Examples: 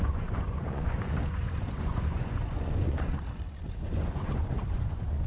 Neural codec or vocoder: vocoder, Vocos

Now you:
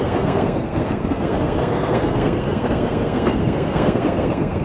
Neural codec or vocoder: codec, SNAC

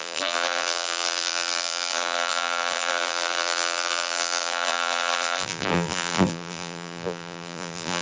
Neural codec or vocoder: vocoder, BigVGAN v2